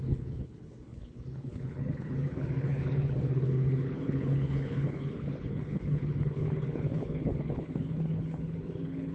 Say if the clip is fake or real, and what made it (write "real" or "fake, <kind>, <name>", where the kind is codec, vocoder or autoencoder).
fake, codec, HILCodec